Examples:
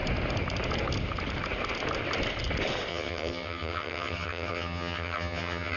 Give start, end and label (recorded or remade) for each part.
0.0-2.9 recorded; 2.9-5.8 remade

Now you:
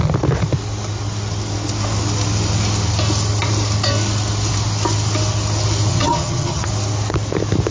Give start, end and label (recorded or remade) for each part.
0.0-5.9 recorded; 5.9-6.7 remade; 6.7-7.7 recorded

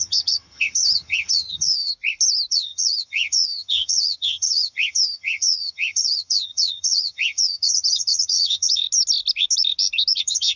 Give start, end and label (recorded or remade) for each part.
0.0-1.9 remade; 1.9-2.5 recorded; 2.5-8.8 remade; 8.8-10.2 recorded; 10.2-10.6 remade

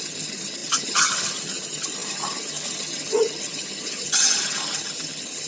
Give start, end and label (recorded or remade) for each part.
0.0-5.5 remade

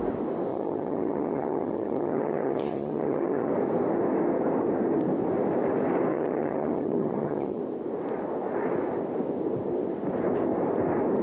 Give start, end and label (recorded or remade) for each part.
0.0-0.5 recorded; 0.5-3.5 remade; 3.5-6.1 recorded; 6.1-7.6 remade; 7.6-11.2 recorded